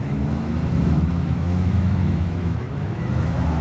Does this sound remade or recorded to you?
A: remade